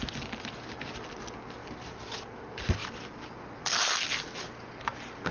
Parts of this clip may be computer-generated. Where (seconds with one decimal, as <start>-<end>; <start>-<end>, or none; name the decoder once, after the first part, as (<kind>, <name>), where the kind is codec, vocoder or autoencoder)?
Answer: 1.6-2.2 (vocoder, BigVGAN v2); 2.8-4.0